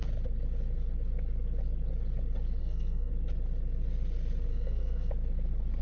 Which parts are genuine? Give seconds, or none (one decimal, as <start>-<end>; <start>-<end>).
0.0-2.6; 3.1-4.5; 5.1-5.8